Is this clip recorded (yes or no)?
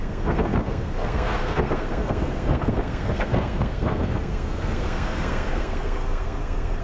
no